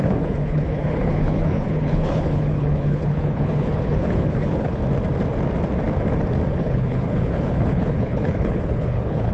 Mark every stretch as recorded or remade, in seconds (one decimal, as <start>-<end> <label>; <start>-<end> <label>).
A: 0.0-4.8 remade; 4.8-6.5 recorded; 6.5-9.3 remade